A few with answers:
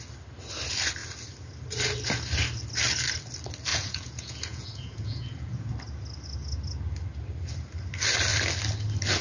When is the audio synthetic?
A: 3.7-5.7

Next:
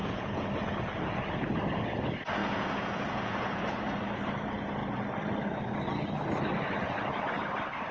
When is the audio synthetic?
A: 0.0-0.5; 2.4-3.8

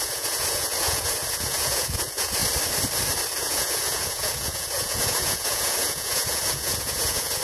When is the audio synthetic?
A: 0.0-2.4; 3.4-7.4

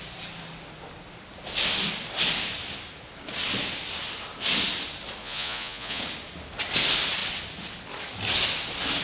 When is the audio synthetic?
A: 5.2-6.0

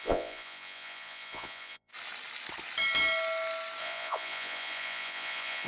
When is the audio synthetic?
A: 0.0-1.9; 3.8-5.7